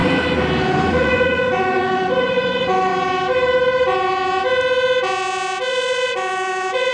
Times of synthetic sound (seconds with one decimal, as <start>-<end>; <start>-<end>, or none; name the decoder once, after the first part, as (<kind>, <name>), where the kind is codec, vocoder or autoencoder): 0.8-2.9 (vocoder, Vocos); 5.7-6.9